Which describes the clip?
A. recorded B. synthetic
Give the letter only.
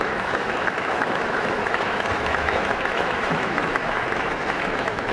B